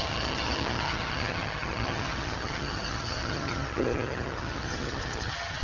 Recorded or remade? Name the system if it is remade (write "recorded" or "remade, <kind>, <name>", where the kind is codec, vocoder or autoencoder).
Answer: remade, vocoder, HiFi-GAN